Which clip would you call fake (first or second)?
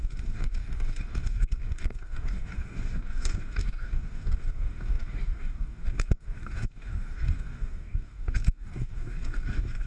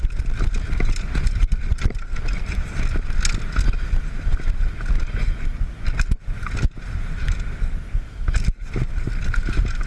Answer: first